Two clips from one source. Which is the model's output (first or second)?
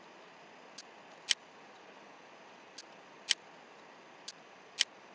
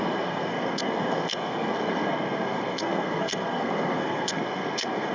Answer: second